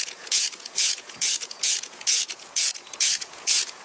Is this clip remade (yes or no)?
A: yes